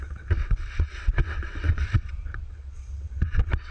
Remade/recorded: remade